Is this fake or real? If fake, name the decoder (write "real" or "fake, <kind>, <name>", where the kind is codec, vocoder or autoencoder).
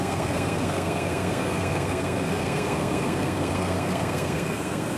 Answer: fake, codec, SNAC